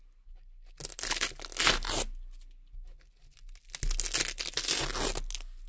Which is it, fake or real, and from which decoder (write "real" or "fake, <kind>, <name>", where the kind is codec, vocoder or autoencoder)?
real